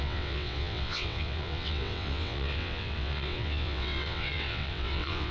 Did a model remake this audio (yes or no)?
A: yes